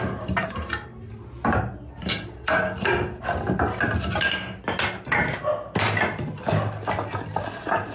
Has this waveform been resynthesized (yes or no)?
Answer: no